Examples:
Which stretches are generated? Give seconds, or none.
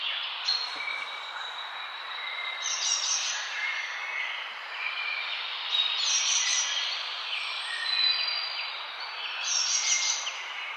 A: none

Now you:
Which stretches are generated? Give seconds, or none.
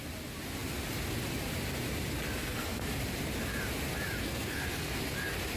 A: 2.4-2.9 (codec, SNAC); 4.2-5.0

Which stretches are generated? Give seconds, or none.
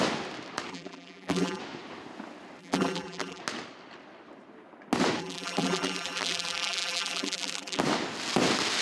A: 0.7-1.6 (vocoder, BigVGAN v2); 2.6-3.4; 5.2-7.8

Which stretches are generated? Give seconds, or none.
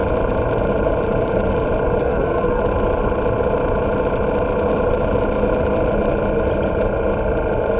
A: 2.0-2.6 (codec, SNAC)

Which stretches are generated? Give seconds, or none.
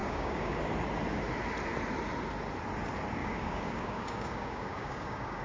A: 0.0-0.6 (codec, DAC); 3.2-5.4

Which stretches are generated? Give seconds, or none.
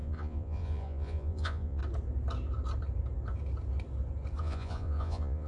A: 0.0-1.8 (vocoder, Vocos); 4.4-5.5